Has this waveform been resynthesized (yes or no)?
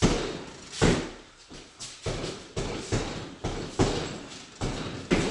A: no